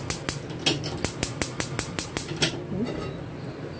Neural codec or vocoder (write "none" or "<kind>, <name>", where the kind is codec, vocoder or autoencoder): none